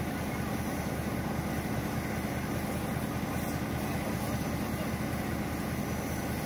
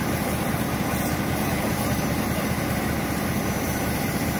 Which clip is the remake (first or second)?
second